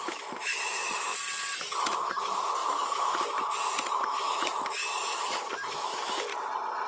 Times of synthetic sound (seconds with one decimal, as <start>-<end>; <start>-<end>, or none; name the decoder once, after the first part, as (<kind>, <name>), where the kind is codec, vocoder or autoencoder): 0.0-1.1 (autoencoder, DAC-VAE); 1.8-6.3